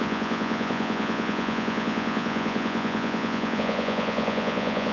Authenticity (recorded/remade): remade